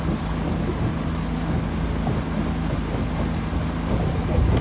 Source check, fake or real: real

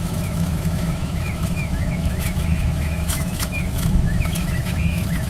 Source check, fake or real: fake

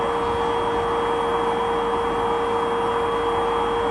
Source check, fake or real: real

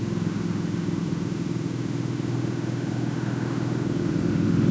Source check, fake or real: fake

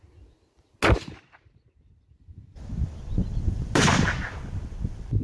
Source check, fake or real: real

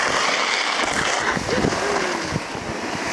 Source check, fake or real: real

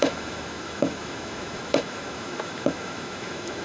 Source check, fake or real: fake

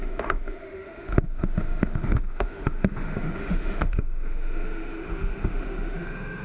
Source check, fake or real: fake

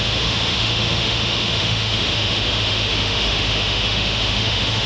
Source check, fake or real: fake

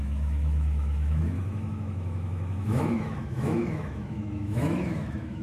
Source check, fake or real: fake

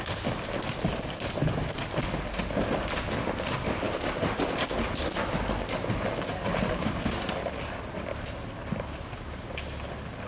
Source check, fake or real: real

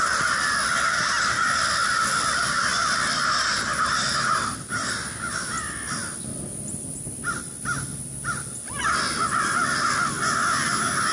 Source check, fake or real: real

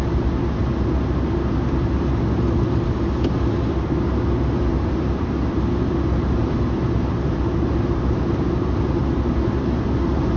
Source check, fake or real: real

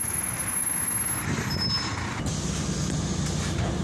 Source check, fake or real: real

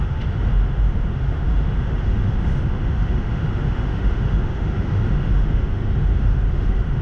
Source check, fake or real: fake